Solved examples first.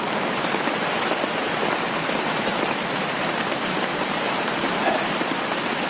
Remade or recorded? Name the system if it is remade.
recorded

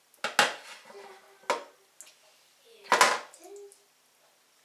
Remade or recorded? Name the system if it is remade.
recorded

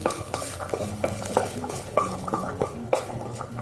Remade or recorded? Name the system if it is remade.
remade, codec, HILCodec